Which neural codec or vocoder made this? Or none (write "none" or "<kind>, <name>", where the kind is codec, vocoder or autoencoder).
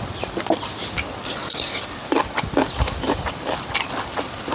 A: none